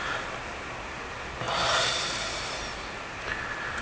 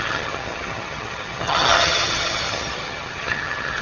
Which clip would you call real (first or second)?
first